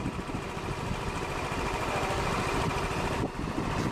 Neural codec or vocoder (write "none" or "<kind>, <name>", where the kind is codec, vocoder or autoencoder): none